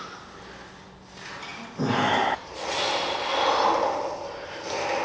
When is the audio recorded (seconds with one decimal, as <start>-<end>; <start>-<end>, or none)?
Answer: 0.0-5.0